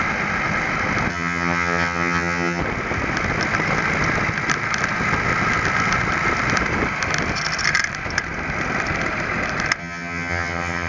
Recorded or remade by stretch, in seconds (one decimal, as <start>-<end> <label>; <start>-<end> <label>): 0.0-1.1 recorded; 1.1-2.6 remade; 2.6-9.8 recorded; 9.8-10.9 remade